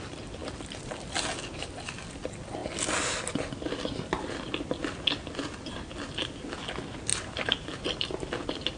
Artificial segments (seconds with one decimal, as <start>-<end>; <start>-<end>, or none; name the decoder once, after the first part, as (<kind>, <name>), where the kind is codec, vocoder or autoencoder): 7.1-7.8 (vocoder, BigVGAN v2)